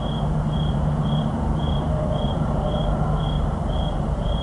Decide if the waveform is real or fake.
fake